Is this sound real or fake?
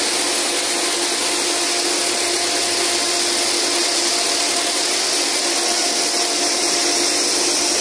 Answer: real